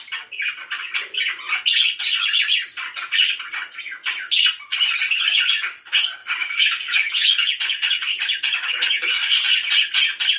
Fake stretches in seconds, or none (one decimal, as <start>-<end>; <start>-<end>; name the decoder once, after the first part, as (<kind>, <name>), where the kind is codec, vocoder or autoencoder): 6.2-9.3 (autoencoder, DAC-VAE)